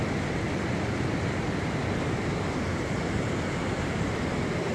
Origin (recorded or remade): recorded